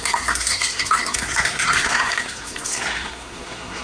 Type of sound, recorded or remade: remade